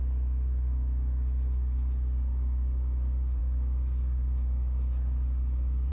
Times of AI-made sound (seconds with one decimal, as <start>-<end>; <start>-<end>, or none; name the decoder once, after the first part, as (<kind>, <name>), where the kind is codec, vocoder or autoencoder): none